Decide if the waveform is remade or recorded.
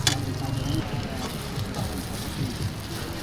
recorded